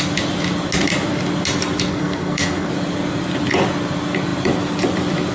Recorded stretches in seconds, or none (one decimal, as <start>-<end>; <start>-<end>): 0.0-1.9; 2.7-5.3